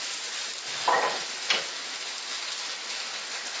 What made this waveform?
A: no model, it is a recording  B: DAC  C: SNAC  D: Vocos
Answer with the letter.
A